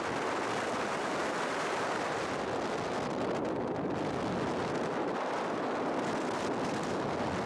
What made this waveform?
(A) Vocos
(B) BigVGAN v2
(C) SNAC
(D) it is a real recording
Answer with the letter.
D